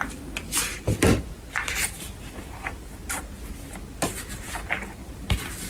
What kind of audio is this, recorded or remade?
remade